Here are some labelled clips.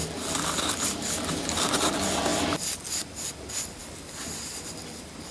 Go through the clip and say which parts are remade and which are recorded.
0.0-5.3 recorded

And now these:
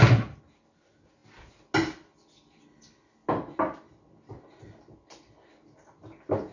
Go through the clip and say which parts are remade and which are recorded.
0.0-6.5 recorded

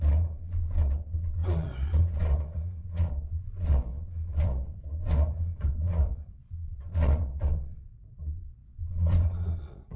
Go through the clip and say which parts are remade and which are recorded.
0.0-10.0 remade

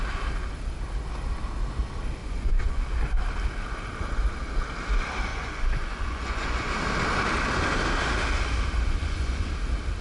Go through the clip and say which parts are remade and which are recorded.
0.0-2.2 recorded; 2.2-2.8 remade; 2.8-5.3 recorded; 5.3-6.7 remade; 6.7-9.0 recorded; 9.0-9.5 remade; 9.5-10.0 recorded

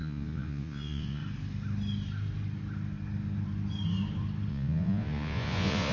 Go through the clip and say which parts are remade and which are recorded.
0.0-1.2 remade; 1.2-4.5 recorded; 4.5-5.9 remade

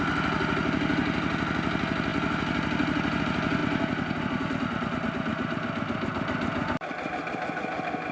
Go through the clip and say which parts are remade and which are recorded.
0.0-8.1 recorded

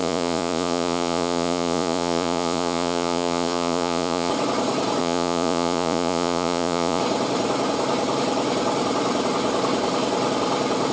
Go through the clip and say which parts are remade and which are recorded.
0.0-4.3 remade; 4.3-5.0 recorded; 5.0-7.0 remade; 7.0-10.9 recorded

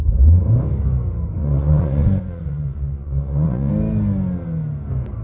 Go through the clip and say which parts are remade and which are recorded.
0.0-1.4 recorded; 1.4-3.7 remade; 3.7-5.2 recorded